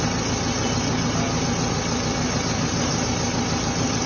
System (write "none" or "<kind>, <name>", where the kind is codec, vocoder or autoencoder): none